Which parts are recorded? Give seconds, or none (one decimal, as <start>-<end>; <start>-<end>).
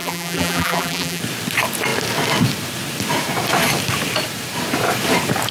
1.2-5.5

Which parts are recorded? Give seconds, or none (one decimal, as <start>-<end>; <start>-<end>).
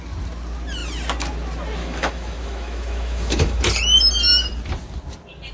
0.0-1.8; 3.6-5.5